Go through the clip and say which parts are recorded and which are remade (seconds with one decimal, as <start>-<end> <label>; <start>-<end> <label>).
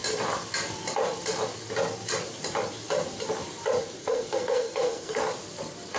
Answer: 0.0-4.0 recorded; 4.0-5.2 remade; 5.2-6.0 recorded